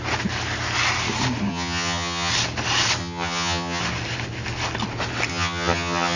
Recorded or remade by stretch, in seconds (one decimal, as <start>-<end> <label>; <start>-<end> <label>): 0.0-1.5 recorded; 1.5-2.3 remade; 2.3-3.0 recorded; 3.0-3.8 remade; 3.8-5.3 recorded; 5.3-6.2 remade